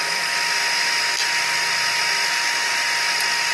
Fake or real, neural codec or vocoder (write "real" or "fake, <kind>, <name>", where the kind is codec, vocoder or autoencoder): real